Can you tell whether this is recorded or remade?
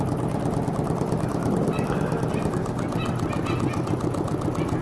recorded